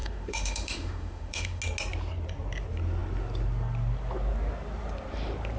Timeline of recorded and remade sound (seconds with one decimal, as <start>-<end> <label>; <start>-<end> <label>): 0.0-1.6 remade; 1.6-5.6 recorded